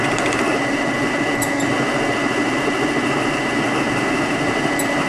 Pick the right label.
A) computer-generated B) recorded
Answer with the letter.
B